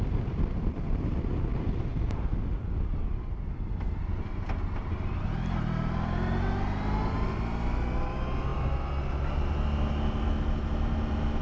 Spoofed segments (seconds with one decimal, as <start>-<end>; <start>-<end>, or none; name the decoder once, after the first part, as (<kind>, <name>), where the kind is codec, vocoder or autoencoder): none